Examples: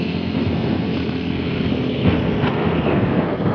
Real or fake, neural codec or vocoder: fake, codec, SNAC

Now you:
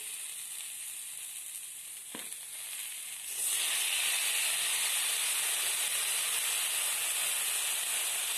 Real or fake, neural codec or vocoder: real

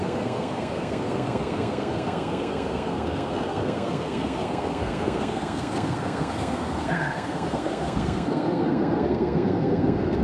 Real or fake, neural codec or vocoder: fake, codec, SNAC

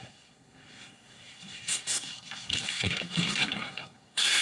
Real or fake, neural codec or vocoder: fake, codec, SNAC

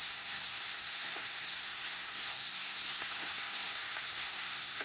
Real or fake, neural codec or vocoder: fake, codec, SNAC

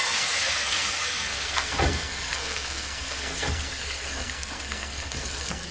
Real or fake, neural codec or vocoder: fake, codec, SNAC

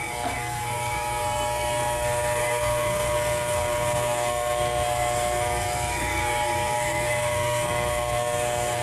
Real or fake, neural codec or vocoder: fake, codec, SNAC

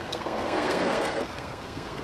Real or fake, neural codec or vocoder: fake, codec, SNAC